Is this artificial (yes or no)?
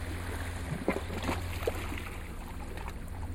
no